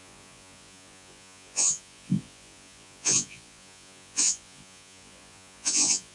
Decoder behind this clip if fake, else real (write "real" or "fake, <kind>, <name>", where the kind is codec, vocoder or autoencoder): fake, vocoder, Vocos